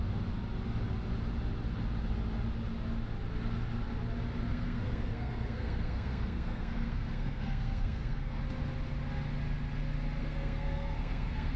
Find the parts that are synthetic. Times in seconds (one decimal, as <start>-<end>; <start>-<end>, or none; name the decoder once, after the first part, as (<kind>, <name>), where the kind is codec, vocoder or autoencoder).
4.5-8.4 (codec, SNAC); 10.2-11.6